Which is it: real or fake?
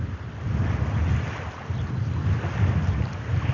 real